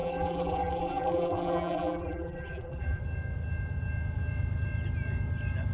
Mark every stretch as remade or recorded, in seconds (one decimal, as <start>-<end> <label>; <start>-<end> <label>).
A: 0.0-3.0 remade; 3.0-5.7 recorded

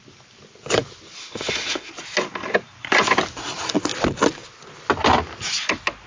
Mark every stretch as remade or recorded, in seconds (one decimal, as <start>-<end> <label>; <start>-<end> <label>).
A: 0.0-1.2 recorded; 1.2-1.9 remade; 1.9-6.1 recorded

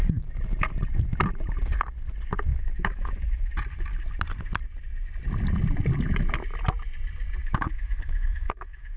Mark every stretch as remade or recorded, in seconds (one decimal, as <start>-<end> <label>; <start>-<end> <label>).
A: 0.0-2.5 recorded; 2.5-3.5 remade; 3.5-7.4 recorded; 7.4-9.0 remade

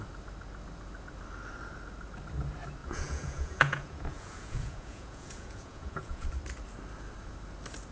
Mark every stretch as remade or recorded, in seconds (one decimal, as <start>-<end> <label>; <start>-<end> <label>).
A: 0.0-2.8 recorded; 2.8-6.3 remade; 6.3-7.9 recorded

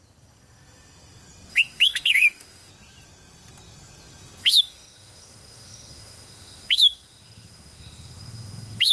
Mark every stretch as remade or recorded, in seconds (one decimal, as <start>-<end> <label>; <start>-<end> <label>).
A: 0.0-1.5 recorded; 1.5-2.7 remade; 2.7-4.4 recorded; 4.4-8.9 remade